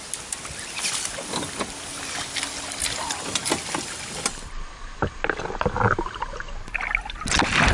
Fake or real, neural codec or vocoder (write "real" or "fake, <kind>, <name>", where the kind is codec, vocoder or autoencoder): real